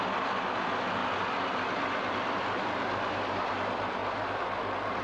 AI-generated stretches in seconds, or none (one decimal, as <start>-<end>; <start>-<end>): none